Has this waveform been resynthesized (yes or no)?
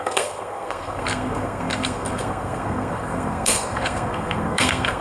yes